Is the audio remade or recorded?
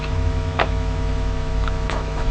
remade